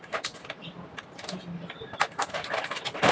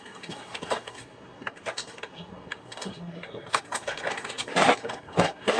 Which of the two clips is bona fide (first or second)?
first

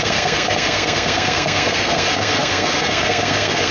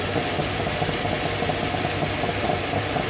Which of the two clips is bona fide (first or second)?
second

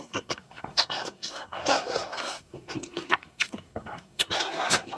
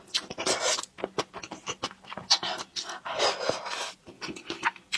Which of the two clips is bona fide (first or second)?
second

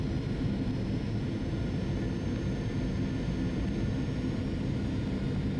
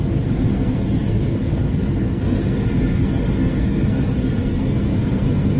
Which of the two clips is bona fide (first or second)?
first